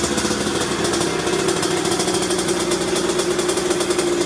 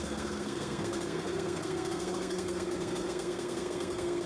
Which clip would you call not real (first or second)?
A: second